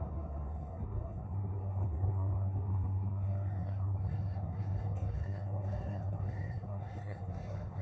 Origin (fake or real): fake